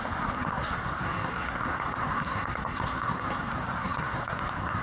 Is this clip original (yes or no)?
no